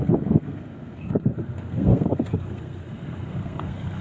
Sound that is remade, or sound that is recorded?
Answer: remade